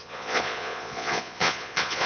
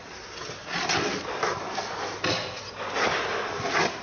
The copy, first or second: first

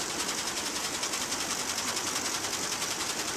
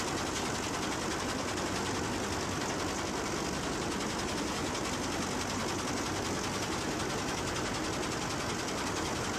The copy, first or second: first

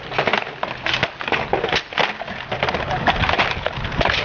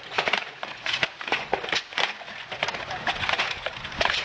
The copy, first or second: second